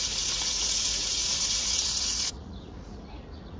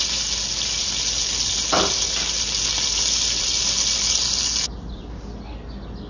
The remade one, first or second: first